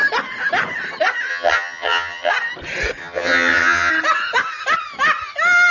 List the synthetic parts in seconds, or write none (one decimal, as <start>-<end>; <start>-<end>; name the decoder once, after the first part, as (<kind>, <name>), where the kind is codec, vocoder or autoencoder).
1.3-2.3 (vocoder, HiFi-GAN); 3.0-3.9